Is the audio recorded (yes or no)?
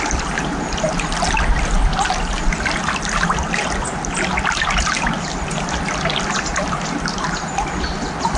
yes